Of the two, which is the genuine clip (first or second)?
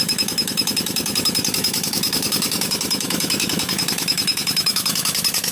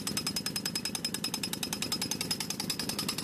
second